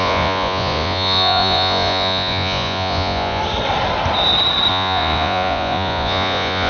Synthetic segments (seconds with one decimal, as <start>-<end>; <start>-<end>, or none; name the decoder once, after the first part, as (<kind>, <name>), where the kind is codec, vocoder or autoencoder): 0.0-3.4 (vocoder, Vocos); 4.7-6.7